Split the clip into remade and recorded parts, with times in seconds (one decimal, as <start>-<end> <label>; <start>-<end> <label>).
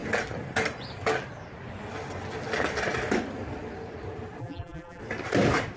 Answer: 0.0-4.4 recorded; 4.4-5.0 remade; 5.0-5.8 recorded